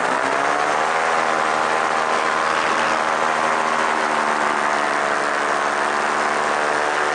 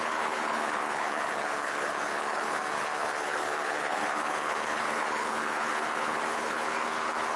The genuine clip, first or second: first